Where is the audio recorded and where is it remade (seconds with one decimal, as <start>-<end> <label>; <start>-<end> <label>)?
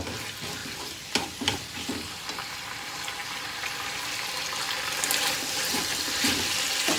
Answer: 0.0-7.0 recorded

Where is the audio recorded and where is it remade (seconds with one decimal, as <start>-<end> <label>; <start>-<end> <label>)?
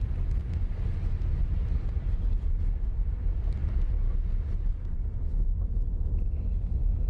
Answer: 0.0-0.4 remade; 0.4-1.1 recorded; 1.1-3.6 remade; 3.6-4.7 recorded; 4.7-7.1 remade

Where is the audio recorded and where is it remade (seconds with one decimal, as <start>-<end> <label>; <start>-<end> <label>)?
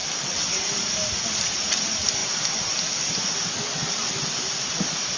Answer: 0.0-2.2 remade; 2.2-4.1 recorded; 4.1-5.2 remade